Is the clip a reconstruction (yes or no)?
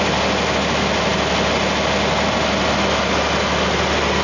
no